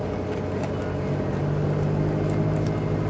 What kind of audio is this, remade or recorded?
recorded